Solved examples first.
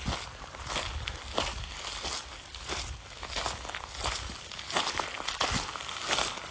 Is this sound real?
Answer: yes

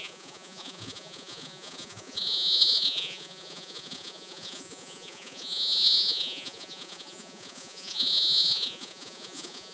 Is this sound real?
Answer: no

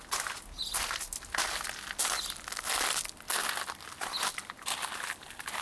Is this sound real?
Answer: yes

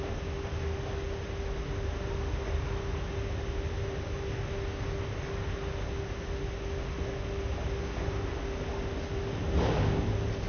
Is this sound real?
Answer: yes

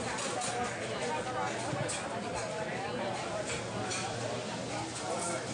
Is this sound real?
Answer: yes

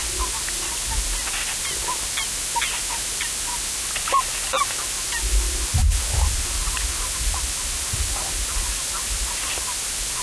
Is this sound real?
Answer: yes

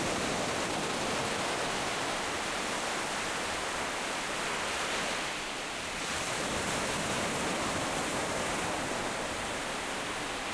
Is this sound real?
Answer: yes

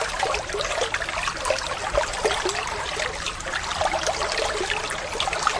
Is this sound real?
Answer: yes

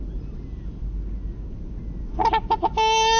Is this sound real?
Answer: yes